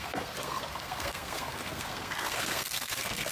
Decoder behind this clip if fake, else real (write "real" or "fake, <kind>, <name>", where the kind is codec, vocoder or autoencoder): fake, codec, SNAC